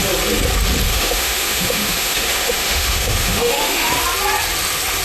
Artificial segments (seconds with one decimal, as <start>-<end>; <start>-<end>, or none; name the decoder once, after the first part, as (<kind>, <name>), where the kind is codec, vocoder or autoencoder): 0.9-3.9 (autoencoder, DAC-VAE)